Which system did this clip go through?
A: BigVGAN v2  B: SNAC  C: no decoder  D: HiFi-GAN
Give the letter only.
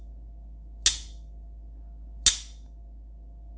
C